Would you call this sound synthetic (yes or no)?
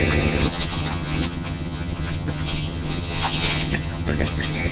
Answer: yes